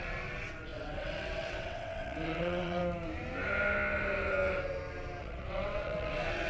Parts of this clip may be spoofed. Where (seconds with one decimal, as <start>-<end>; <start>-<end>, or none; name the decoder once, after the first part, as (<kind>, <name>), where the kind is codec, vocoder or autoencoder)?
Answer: 0.0-2.8 (vocoder, WaveNeXt); 5.2-6.5